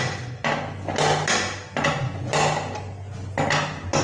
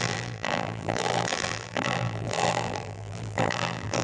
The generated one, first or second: second